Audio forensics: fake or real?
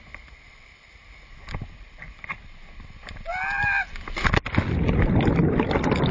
real